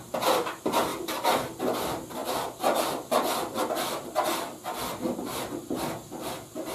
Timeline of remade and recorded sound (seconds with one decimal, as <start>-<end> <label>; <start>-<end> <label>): 0.0-0.9 recorded; 0.9-1.5 remade; 1.5-2.2 recorded; 2.2-3.8 remade; 3.8-6.7 recorded